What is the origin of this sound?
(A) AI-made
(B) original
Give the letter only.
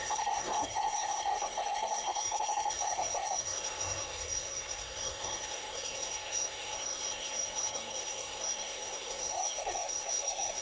A